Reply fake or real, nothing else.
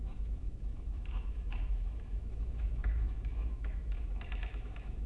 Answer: fake